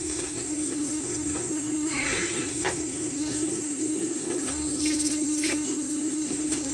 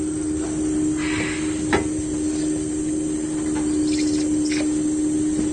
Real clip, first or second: second